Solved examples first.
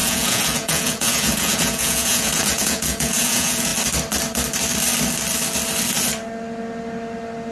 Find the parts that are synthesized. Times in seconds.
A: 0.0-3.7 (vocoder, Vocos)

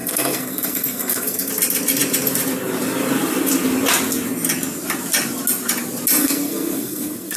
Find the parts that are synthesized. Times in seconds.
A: 0.0-1.5 (codec, SNAC); 6.2-7.4

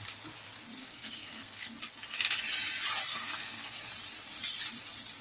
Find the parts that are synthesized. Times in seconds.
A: 0.8-1.7 (codec, SNAC); 3.1-3.9

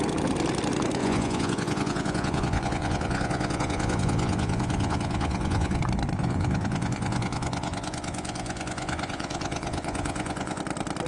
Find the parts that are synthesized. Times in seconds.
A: 1.0-5.8 (vocoder, Vocos); 6.2-10.6

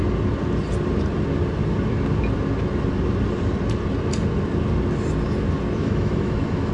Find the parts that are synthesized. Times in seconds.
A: 5.8-6.7 (autoencoder, DAC-VAE)

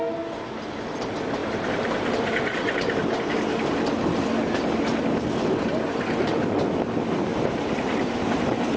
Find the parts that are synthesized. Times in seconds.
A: 1.4-3.5 (vocoder, BigVGAN v2); 7.3-8.8